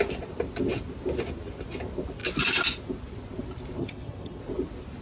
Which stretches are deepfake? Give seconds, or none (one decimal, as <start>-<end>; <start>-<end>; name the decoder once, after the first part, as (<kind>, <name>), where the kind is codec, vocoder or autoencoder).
3.8-4.4 (vocoder, HiFi-GAN)